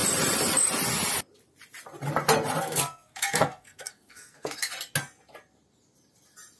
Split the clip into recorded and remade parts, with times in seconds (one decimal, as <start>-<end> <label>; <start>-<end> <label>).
0.0-2.6 recorded; 2.6-4.7 remade; 4.7-6.6 recorded